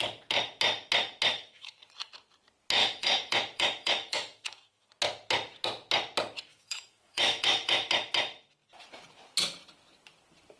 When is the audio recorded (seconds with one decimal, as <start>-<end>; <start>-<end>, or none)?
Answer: 0.0-1.3; 1.8-2.8; 4.9-6.5; 7.9-10.6